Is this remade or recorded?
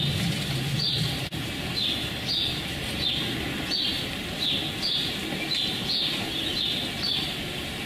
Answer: recorded